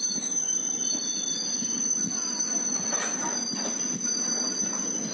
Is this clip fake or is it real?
real